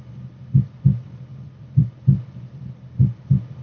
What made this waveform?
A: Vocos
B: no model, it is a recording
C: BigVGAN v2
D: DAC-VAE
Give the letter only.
C